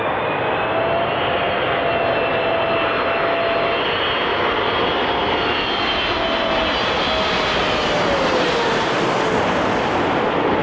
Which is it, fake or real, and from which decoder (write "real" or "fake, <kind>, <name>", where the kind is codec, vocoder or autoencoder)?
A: real